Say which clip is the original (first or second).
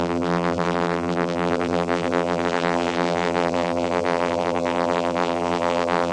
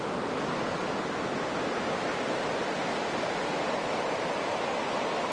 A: second